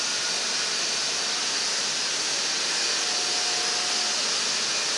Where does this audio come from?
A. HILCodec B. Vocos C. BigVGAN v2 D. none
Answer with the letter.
D